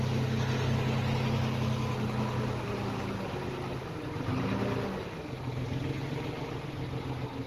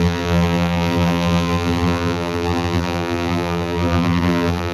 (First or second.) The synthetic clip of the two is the second